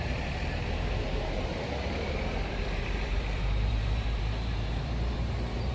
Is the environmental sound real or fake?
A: fake